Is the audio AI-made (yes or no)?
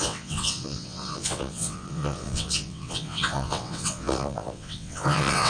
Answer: yes